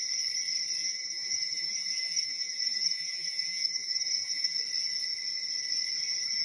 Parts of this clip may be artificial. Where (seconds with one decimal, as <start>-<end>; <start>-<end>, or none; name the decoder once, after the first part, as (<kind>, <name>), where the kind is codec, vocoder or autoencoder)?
0.8-4.6 (vocoder, BigVGAN v2)